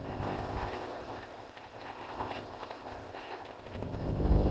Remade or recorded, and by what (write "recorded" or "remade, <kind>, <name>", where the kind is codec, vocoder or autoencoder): remade, codec, ZipCodec